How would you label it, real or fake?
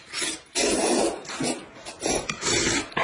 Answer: real